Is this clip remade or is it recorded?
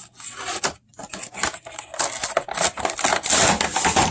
recorded